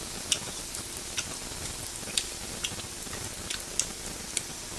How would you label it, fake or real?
real